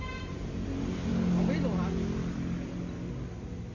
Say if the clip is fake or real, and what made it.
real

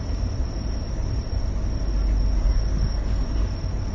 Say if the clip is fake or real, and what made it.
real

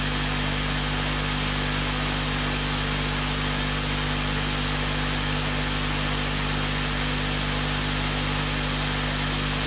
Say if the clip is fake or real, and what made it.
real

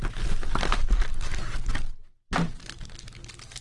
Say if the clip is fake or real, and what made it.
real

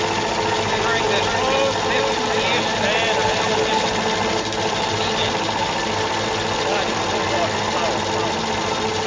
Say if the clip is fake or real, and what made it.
real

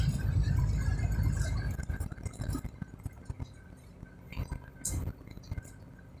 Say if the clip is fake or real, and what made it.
real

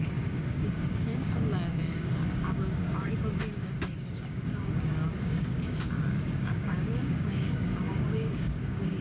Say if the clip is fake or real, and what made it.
fake, codec, DAC